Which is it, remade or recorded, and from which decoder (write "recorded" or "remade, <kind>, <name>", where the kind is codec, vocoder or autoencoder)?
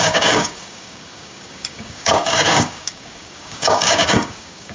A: remade, codec, DAC